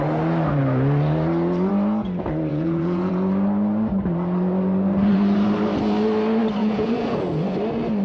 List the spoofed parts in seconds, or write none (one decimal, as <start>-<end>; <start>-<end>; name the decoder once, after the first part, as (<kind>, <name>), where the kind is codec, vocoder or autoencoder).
2.5-3.1 (vocoder, Vocos); 6.6-7.2